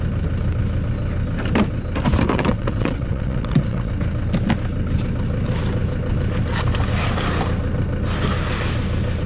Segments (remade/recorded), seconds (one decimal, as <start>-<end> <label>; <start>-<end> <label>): 0.0-2.3 recorded; 2.3-3.9 remade; 3.9-9.3 recorded